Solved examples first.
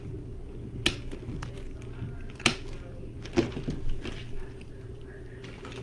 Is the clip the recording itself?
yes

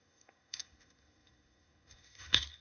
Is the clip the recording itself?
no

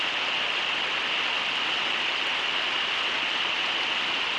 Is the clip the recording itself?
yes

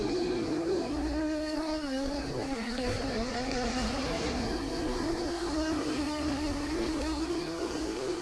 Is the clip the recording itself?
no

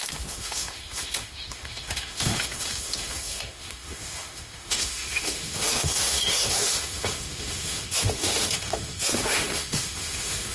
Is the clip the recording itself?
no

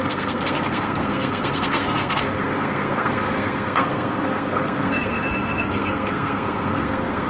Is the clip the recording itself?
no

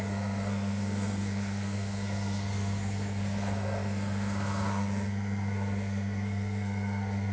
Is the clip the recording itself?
no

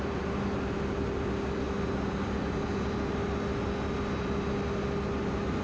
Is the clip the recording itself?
yes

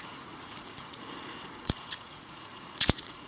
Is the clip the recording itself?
no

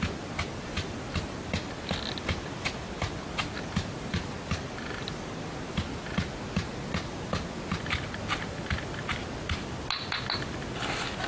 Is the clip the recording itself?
yes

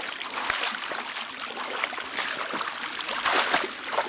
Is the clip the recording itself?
yes